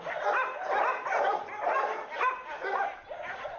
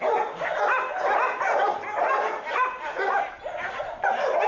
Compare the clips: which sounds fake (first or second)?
first